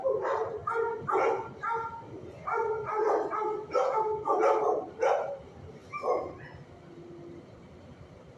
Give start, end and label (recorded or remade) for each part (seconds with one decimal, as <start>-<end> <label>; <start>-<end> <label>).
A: 0.0-0.6 remade; 0.6-4.6 recorded; 4.6-5.8 remade; 5.8-7.4 recorded; 7.4-8.4 remade